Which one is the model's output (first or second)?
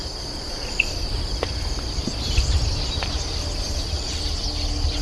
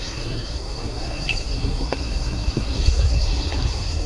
second